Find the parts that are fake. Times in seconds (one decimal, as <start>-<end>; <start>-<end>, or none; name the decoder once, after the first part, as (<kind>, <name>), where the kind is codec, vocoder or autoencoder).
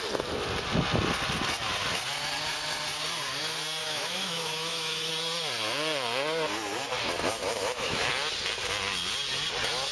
3.8-5.1 (autoencoder, DAC-VAE); 7.4-8.1